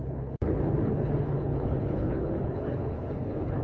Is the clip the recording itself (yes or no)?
no